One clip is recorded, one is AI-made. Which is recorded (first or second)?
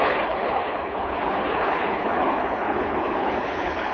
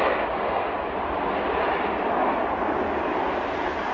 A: second